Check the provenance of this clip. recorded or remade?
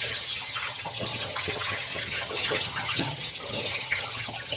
remade